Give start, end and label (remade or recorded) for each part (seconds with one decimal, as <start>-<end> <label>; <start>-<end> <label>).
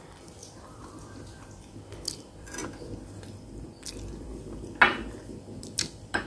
0.0-0.4 remade; 0.4-2.2 recorded; 2.2-2.6 remade; 2.6-3.9 recorded; 3.9-4.3 remade; 4.3-5.6 recorded; 5.6-6.3 remade